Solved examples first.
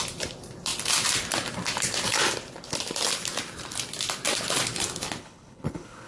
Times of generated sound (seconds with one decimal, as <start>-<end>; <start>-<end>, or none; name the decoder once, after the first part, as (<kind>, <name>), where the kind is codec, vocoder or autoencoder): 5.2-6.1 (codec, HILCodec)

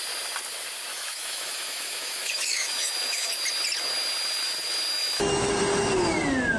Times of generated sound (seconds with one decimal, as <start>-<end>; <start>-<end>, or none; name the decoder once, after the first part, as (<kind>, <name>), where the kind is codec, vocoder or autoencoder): 0.9-3.3 (autoencoder, DAC-VAE); 4.9-5.5

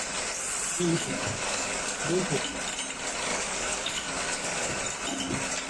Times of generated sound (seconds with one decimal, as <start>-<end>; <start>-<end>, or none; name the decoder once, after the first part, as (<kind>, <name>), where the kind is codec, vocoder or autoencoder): 0.9-2.0 (codec, DAC); 3.3-4.8

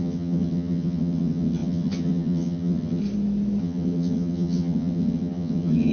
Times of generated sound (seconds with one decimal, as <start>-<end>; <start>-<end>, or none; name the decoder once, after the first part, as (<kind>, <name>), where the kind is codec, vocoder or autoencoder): 0.0-3.0 (vocoder, HiFi-GAN); 3.6-5.9